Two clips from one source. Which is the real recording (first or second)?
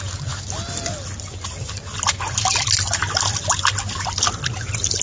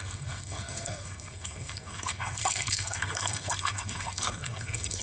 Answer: first